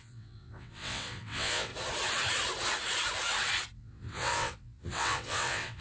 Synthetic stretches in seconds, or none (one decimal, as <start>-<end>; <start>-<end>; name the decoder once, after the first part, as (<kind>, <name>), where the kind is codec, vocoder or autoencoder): 0.0-1.7 (vocoder, WaveNeXt); 3.7-5.8